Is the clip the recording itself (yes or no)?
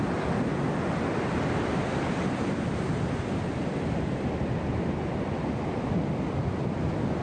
yes